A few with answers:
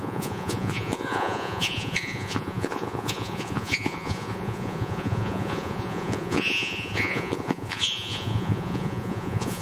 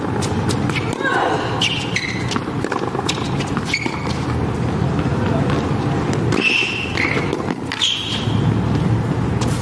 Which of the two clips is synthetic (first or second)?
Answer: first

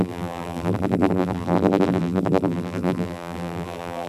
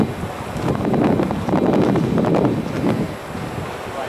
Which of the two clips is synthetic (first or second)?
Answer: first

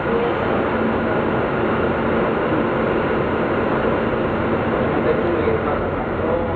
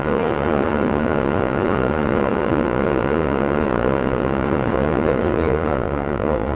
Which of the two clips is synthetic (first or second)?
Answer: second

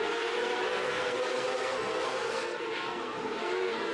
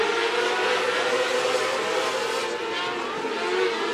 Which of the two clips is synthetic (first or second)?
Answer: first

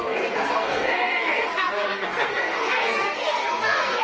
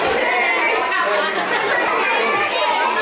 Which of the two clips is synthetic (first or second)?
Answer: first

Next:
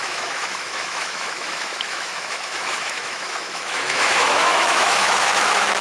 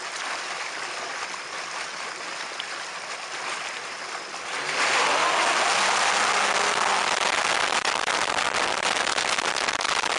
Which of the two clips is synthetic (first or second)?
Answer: first